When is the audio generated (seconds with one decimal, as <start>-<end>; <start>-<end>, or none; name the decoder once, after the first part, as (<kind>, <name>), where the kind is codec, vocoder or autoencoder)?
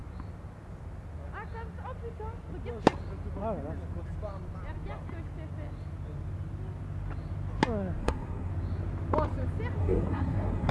8.0-8.5 (codec, SNAC); 9.8-10.7